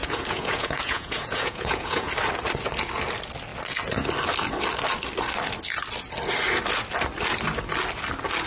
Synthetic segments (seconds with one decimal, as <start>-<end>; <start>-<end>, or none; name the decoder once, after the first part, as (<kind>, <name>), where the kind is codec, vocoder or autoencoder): 0.0-2.1 (vocoder, Vocos)